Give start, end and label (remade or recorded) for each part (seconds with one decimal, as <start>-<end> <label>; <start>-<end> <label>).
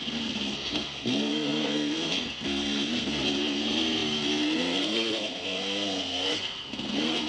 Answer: 0.0-7.3 remade